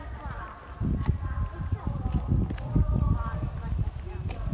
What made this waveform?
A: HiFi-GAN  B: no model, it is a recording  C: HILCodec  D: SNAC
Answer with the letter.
B